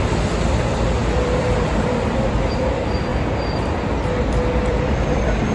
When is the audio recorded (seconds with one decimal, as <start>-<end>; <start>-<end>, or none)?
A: 3.1-4.2